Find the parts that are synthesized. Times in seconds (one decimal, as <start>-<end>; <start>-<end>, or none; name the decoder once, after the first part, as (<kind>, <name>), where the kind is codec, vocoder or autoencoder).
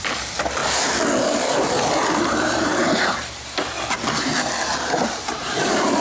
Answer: 0.0-0.6 (vocoder, BigVGAN v2); 2.3-2.7; 5.2-6.0